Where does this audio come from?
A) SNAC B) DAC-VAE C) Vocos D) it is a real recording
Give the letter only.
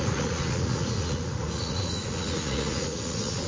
C